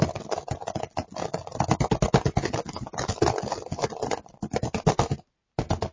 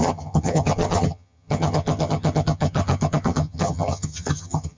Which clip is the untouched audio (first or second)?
first